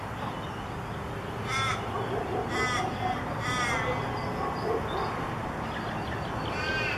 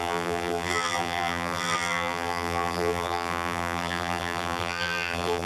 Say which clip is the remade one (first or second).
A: second